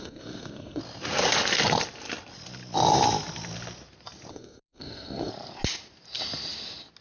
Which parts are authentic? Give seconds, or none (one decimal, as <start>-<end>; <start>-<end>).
0.8-4.3; 5.3-7.0

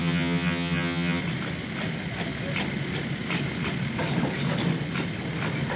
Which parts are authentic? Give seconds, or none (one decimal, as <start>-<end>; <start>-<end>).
1.2-5.8

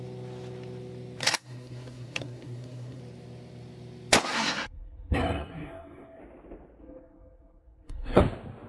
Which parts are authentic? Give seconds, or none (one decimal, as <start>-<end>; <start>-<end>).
0.0-1.2; 3.0-4.2; 6.2-6.8; 8.2-8.7

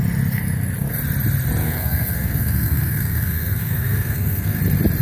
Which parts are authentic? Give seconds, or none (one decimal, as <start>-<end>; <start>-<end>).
0.0-1.6; 4.6-5.0

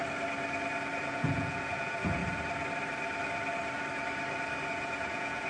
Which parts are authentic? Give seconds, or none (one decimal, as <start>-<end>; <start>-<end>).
0.0-1.0; 2.2-4.7

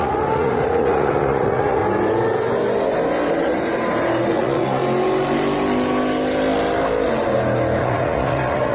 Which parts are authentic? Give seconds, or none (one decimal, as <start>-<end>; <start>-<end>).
1.8-4.3; 4.8-7.8

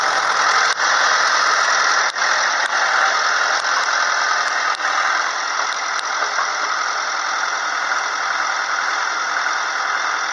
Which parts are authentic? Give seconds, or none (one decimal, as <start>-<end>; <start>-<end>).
0.0-10.3

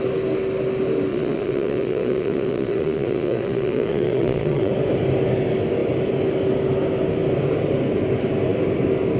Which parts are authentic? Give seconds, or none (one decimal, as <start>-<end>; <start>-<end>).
0.0-1.1; 4.7-9.2